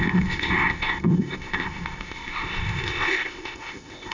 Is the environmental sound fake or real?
fake